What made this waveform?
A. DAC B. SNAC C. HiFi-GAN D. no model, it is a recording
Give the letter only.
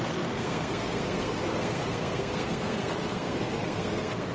B